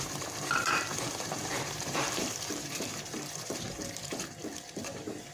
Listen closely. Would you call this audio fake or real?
fake